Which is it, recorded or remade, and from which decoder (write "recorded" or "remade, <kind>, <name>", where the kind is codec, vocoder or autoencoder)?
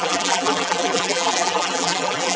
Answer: remade, vocoder, BigVGAN v2